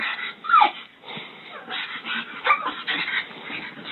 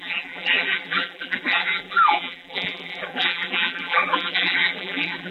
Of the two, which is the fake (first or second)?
second